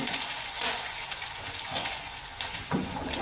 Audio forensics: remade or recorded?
remade